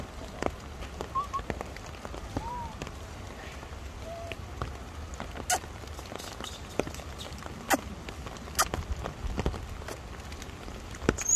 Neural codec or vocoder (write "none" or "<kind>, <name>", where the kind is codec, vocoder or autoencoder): none